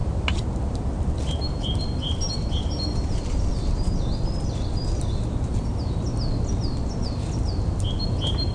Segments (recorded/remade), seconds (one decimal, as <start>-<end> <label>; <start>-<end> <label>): 0.0-8.5 recorded